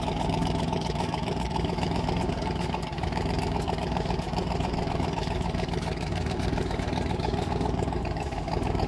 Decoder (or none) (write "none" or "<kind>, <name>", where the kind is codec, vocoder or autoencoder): codec, DAC